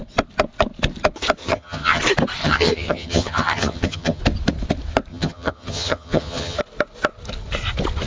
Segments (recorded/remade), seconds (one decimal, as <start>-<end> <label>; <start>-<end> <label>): 0.0-1.4 recorded; 1.4-2.0 remade; 2.0-2.4 recorded; 2.4-4.2 remade; 4.2-5.1 recorded; 5.1-6.6 remade; 6.6-8.1 recorded